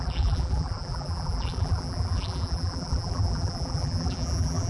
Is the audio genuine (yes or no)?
no